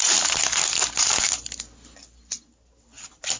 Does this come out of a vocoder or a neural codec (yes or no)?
no